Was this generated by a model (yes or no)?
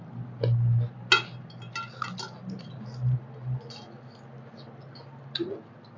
no